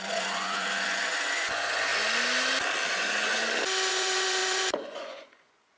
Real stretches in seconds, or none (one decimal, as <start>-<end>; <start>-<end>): 1.9-2.9; 3.3-3.9